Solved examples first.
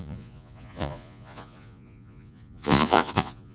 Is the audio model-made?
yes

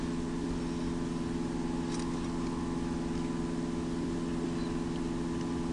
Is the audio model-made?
no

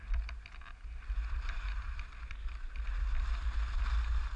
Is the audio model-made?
no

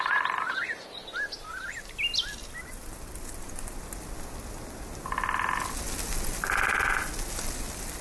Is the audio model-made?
no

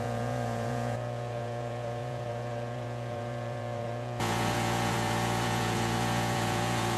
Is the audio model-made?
yes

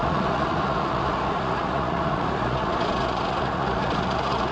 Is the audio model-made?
yes